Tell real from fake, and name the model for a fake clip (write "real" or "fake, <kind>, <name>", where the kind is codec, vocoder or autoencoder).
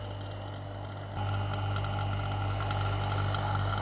real